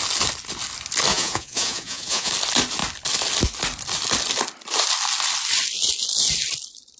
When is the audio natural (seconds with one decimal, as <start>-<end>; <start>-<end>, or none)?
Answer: 0.0-1.1; 2.3-7.0